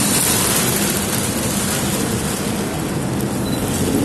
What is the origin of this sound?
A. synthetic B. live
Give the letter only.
B